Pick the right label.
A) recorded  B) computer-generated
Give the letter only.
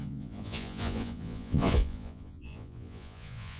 B